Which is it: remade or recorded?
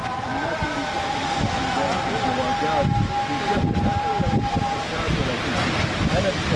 recorded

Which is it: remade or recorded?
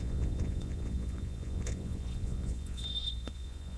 remade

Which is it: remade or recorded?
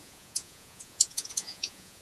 remade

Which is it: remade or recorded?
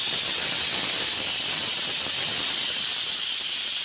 recorded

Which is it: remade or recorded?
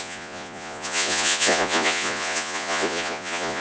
remade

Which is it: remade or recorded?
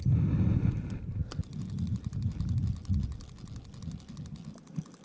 recorded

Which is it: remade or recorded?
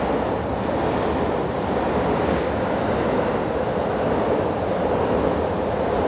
recorded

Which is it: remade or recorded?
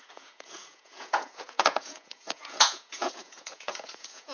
remade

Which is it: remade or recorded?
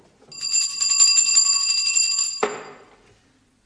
recorded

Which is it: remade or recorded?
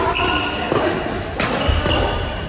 recorded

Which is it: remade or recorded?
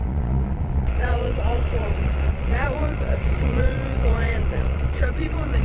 remade